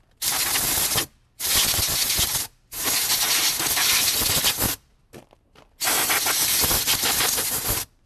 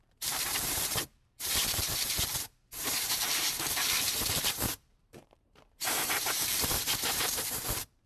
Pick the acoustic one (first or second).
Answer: first